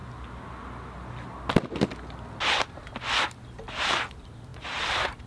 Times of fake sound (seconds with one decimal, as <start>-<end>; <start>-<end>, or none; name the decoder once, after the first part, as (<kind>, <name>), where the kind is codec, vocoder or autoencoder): 3.2-5.3 (vocoder, BigVGAN v2)